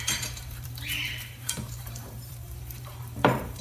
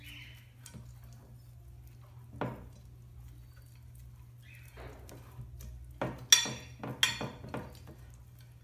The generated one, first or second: first